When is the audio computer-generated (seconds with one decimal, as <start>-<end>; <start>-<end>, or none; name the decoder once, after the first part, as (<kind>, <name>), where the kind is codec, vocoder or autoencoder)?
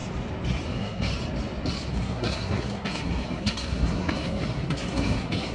0.7-1.1 (codec, SNAC); 1.9-5.5